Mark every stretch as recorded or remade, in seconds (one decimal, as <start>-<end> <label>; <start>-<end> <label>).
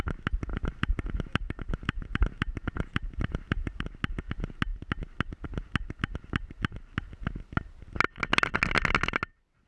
0.0-0.5 recorded; 0.5-3.8 remade; 3.8-9.7 recorded